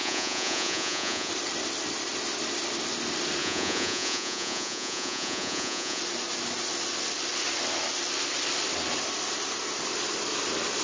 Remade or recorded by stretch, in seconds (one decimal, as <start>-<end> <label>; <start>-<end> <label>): 0.0-1.3 remade; 1.3-3.4 recorded; 3.4-6.0 remade; 6.0-10.8 recorded